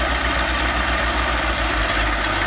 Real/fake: real